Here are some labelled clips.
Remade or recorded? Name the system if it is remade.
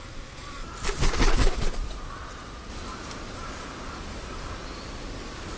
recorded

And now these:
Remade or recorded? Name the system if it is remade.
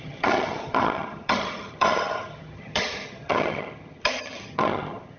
remade, vocoder, HiFi-GAN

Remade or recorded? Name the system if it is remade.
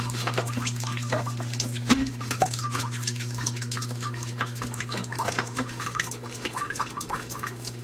remade, autoencoder, DAC-VAE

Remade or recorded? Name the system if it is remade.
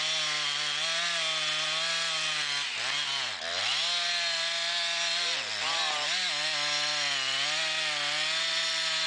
recorded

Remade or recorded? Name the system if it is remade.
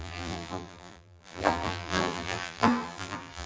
remade, vocoder, BigVGAN v2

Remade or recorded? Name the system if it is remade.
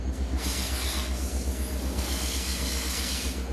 remade, codec, SNAC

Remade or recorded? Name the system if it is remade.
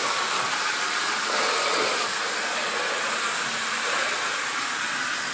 recorded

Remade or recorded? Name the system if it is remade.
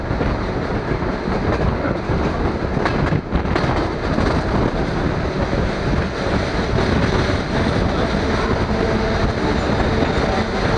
recorded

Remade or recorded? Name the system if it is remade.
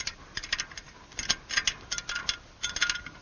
recorded